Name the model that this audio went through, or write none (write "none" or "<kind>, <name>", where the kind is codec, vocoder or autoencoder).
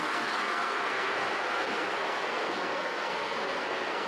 codec, SNAC